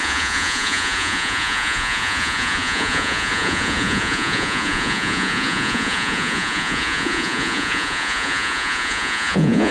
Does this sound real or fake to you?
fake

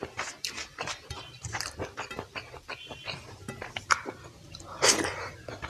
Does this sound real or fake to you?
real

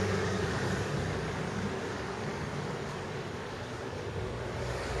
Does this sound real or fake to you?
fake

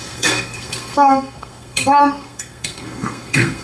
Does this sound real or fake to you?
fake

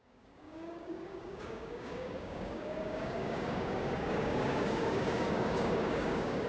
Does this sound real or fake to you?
fake